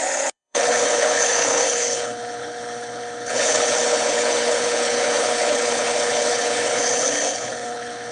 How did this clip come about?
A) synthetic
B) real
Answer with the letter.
A